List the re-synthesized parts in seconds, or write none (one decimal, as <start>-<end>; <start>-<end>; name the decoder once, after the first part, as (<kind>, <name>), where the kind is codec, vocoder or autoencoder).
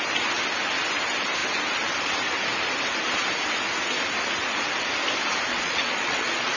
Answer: 5.5-6.6 (vocoder, Vocos)